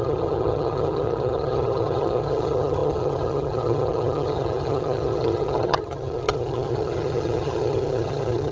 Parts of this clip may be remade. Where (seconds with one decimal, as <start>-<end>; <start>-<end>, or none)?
0.0-8.5